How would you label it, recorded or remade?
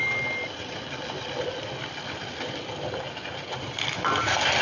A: recorded